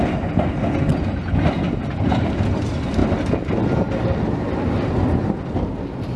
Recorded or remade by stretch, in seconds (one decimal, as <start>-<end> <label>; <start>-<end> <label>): 0.0-6.2 recorded